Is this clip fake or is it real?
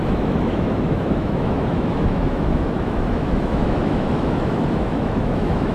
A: fake